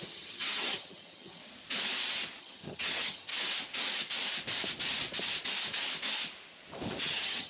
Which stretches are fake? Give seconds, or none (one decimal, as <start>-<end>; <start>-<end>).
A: 0.0-1.4; 2.4-3.3; 7.0-7.5